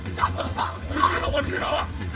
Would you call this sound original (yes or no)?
no